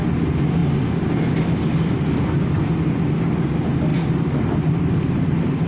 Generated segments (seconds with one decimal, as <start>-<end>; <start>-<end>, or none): none